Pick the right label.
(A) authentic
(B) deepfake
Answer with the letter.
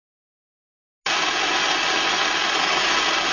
A